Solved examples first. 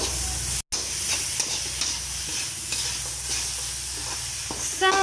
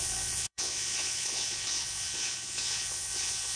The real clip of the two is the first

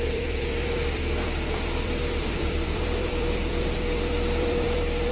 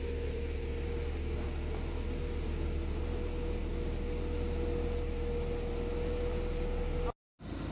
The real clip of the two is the second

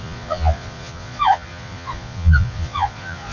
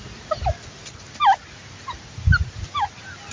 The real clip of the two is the second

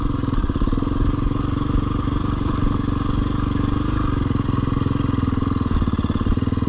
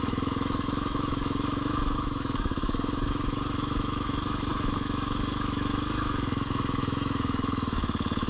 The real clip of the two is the first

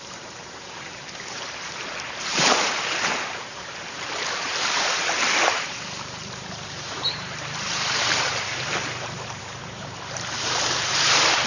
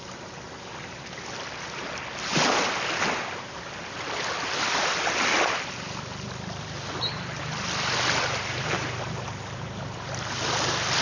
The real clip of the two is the second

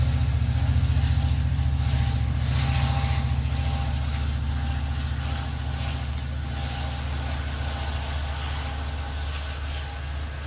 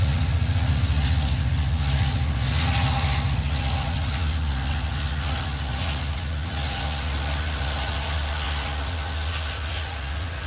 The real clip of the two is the first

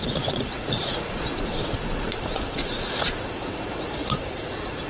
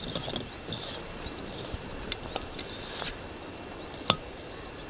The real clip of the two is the second